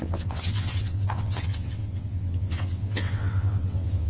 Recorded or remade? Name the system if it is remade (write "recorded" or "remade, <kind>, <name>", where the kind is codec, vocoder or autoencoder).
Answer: remade, vocoder, WaveNeXt